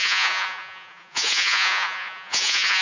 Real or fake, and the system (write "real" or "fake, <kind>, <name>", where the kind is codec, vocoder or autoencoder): fake, vocoder, Vocos